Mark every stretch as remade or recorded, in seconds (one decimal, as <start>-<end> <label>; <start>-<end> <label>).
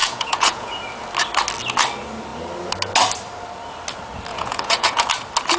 0.0-0.8 remade; 0.8-4.3 recorded; 4.3-5.1 remade; 5.1-5.6 recorded